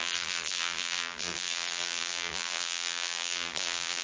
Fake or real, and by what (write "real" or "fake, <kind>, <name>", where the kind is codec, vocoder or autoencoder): fake, vocoder, BigVGAN v2